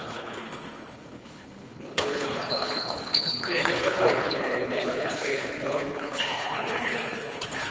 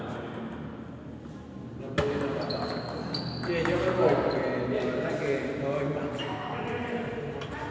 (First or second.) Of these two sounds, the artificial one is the first